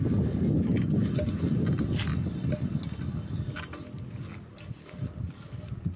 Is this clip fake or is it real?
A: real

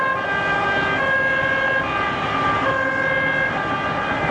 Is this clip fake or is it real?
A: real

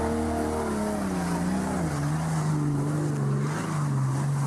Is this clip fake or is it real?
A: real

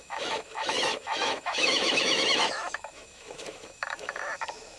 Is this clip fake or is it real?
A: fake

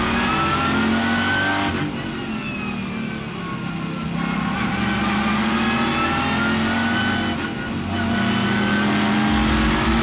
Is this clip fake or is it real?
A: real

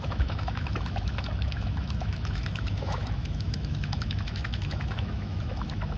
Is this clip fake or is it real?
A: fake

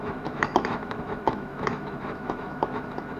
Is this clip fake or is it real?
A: fake